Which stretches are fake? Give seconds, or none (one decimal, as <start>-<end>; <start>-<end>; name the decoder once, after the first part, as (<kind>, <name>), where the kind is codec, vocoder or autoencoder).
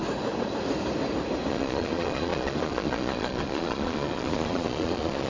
1.5-5.3 (vocoder, Vocos)